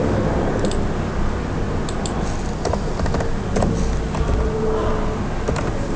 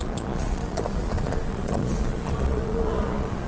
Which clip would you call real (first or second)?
first